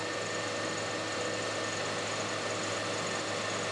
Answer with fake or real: real